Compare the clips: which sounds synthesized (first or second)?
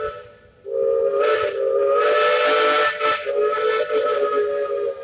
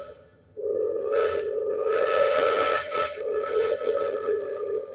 second